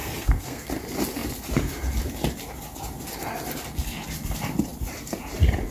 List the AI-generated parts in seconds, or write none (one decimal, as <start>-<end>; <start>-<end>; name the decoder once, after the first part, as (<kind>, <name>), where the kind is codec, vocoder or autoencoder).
0.0-0.7 (codec, SNAC)